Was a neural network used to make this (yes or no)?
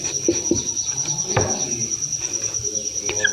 no